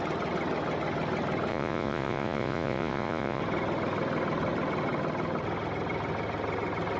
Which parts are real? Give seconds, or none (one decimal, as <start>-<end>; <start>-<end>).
0.0-1.5; 3.4-7.0

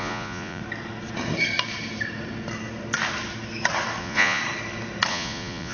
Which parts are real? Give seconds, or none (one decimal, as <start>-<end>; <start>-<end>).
0.6-4.0; 4.4-5.1

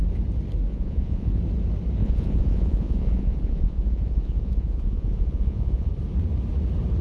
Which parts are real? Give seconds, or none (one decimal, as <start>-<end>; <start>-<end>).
0.0-0.7; 1.4-2.0; 5.9-7.0

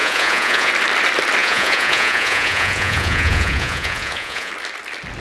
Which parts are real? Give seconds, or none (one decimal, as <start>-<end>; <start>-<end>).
0.7-1.4; 4.5-5.2

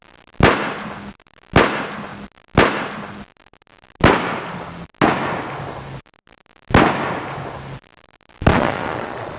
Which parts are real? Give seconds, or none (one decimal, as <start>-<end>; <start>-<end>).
0.0-8.5

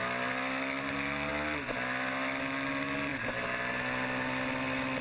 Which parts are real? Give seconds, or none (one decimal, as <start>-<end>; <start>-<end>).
0.0-5.0